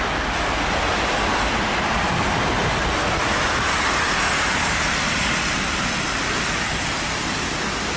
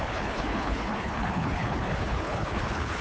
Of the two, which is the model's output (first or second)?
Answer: second